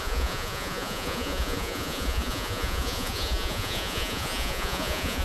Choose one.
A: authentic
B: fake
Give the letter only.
B